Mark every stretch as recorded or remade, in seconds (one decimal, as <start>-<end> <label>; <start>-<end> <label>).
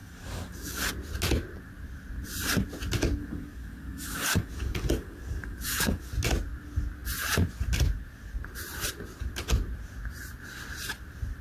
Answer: 0.0-0.9 remade; 0.9-3.2 recorded; 3.2-6.1 remade; 6.1-11.4 recorded